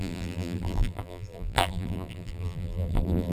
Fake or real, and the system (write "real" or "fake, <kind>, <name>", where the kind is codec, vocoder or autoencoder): fake, vocoder, BigVGAN v2